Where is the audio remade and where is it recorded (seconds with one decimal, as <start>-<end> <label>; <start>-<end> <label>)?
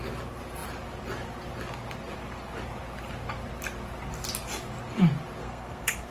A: 0.0-5.4 recorded; 5.4-6.1 remade